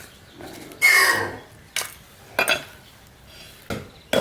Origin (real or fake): real